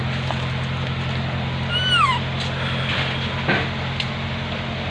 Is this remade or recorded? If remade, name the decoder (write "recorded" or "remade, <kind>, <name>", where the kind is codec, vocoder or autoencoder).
recorded